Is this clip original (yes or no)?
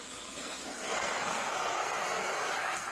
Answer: no